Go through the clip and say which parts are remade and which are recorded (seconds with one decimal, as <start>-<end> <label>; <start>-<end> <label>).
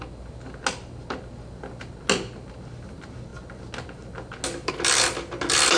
0.0-5.8 recorded